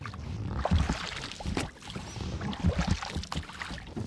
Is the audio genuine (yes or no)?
yes